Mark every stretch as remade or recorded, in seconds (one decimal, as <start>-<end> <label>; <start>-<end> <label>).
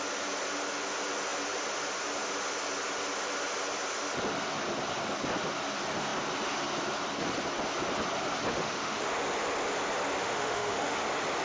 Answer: 0.0-8.5 recorded; 8.5-9.1 remade; 9.1-10.2 recorded; 10.2-11.0 remade; 11.0-11.4 recorded